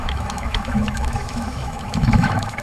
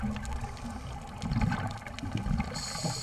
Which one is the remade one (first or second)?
first